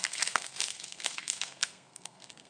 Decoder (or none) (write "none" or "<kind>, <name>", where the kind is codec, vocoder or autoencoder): codec, SNAC